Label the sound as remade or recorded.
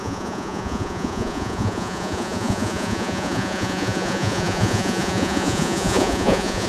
remade